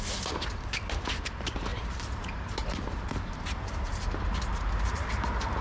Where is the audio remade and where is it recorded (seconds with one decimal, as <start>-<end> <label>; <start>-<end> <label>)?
0.0-1.7 recorded; 1.7-5.1 remade; 5.1-5.6 recorded